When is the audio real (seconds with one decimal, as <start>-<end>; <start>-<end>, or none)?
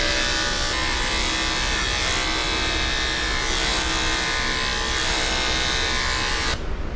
0.0-7.0